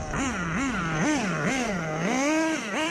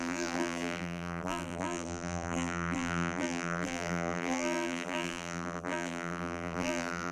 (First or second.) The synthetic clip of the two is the second